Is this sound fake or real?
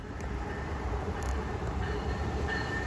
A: fake